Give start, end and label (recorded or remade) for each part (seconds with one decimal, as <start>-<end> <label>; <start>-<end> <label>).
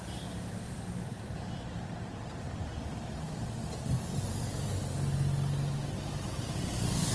0.0-7.1 recorded